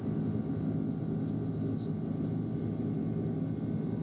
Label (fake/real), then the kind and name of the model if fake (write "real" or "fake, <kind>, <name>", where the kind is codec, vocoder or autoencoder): real